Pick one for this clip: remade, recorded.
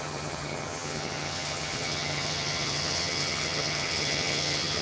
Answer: remade